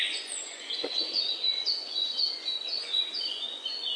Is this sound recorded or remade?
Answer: remade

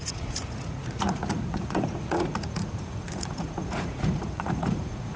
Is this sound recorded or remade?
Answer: remade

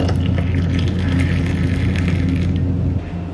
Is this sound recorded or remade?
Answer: recorded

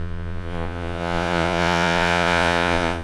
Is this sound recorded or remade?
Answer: remade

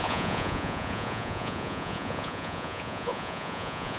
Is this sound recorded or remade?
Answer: remade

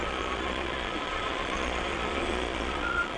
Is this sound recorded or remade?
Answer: remade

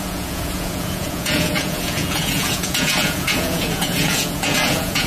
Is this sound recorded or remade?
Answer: remade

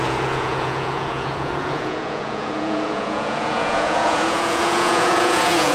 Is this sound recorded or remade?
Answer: remade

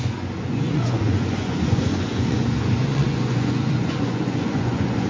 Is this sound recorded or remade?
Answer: remade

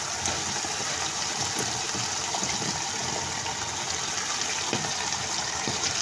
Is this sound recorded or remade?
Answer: recorded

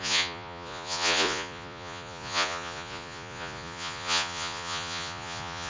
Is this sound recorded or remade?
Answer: remade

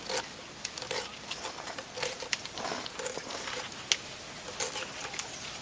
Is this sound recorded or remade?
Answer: recorded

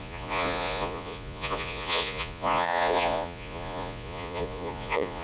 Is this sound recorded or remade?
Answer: remade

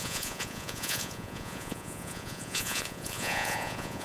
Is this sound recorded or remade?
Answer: remade